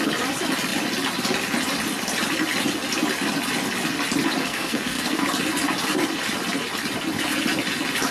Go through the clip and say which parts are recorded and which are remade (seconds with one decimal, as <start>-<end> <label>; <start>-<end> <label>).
0.0-4.4 recorded; 4.4-5.2 remade; 5.2-8.1 recorded

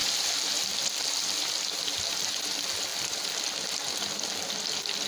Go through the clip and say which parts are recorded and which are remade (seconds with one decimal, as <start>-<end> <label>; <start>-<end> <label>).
0.0-5.1 recorded

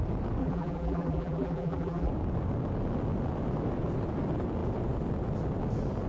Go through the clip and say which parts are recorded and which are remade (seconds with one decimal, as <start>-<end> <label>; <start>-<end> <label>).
0.0-0.4 recorded; 0.4-2.1 remade; 2.1-6.1 recorded

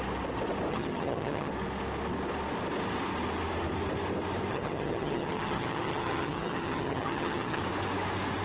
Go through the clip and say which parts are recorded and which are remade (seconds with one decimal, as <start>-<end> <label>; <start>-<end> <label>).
0.0-0.7 recorded; 0.7-1.5 remade; 1.5-4.5 recorded; 4.5-7.6 remade; 7.6-8.4 recorded